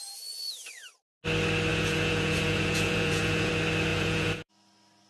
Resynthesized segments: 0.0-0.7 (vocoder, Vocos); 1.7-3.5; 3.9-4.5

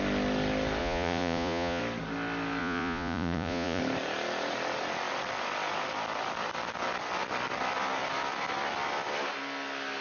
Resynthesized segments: 0.8-1.8 (vocoder, Vocos); 2.6-3.8

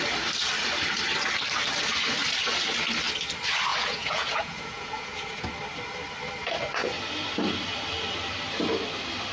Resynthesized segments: 3.7-5.4 (vocoder, Vocos)

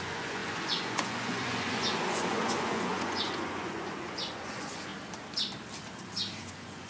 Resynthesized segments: 0.0-4.9 (vocoder, Vocos); 6.4-6.9

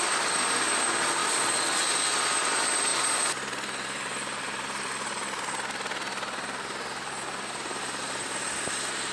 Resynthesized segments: none

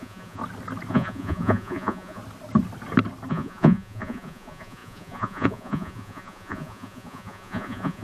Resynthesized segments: 0.0-0.4 (vocoder, Vocos); 0.9-2.2; 3.3-8.0

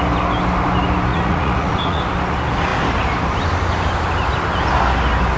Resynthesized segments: 1.1-2.0 (vocoder, Vocos)

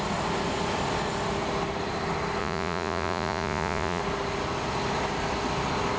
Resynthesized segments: 2.4-4.0 (vocoder, Vocos)